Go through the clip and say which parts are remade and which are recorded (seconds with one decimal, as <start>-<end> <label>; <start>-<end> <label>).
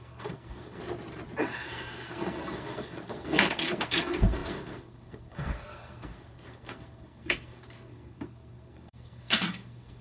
0.0-0.8 remade; 0.8-1.4 recorded; 1.4-10.0 remade